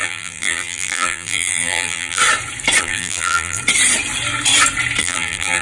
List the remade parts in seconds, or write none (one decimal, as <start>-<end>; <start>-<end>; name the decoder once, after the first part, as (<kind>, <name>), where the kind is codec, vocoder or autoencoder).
0.0-2.2 (vocoder, BigVGAN v2); 2.8-3.6; 5.0-5.6